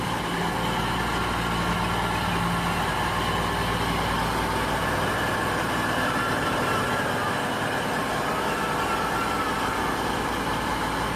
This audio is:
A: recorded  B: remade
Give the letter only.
A